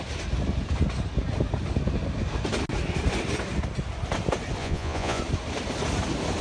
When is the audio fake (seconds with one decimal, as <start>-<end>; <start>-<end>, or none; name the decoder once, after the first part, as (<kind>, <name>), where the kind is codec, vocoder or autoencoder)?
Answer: 4.6-5.2 (vocoder, Vocos)